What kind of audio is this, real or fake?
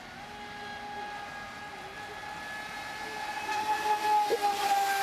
real